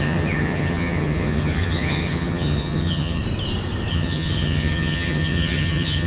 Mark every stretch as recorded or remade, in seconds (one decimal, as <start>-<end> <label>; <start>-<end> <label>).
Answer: 0.0-3.2 remade; 3.2-3.9 recorded; 3.9-6.1 remade